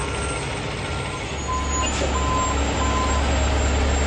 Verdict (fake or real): real